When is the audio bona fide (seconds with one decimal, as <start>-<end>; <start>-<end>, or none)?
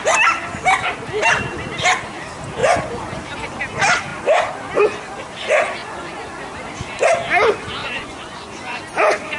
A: 0.0-2.6; 3.2-5.8; 6.4-7.8; 8.8-9.4